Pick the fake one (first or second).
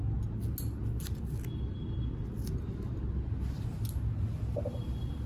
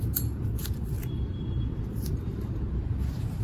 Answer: second